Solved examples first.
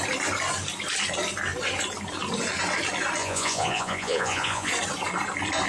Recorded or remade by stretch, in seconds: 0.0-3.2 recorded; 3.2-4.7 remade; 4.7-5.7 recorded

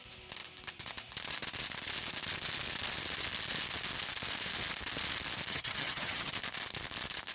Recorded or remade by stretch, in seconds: 0.0-5.5 recorded; 5.5-6.3 remade; 6.3-7.3 recorded

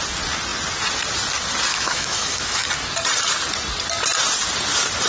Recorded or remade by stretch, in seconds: 0.0-1.7 recorded; 1.7-2.7 remade; 2.7-5.1 recorded

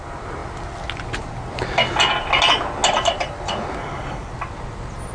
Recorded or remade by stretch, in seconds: 0.0-3.8 recorded; 3.8-4.3 remade; 4.3-5.1 recorded

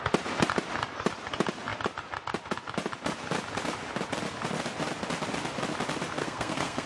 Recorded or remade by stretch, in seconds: 0.0-6.2 recorded; 6.2-6.9 remade

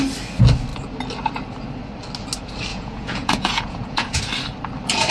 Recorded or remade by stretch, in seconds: 0.0-2.7 recorded; 2.7-4.2 remade; 4.2-5.1 recorded